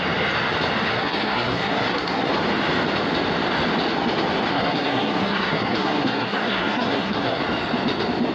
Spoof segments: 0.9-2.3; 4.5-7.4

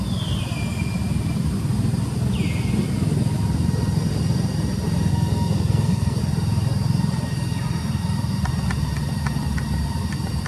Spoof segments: 5.1-6.2

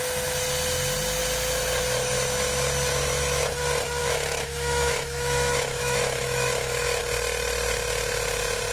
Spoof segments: 2.9-3.6; 4.0-7.0

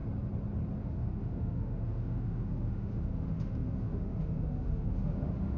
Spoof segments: 0.8-5.6

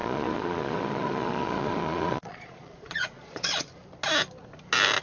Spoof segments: 0.0-3.7

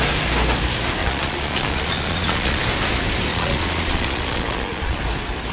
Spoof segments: 1.0-2.6; 3.3-5.0